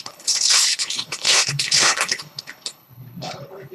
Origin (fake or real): fake